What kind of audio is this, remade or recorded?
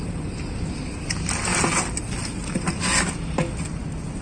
recorded